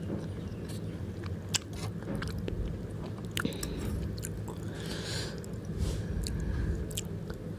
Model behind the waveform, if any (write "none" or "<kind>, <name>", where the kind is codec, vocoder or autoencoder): none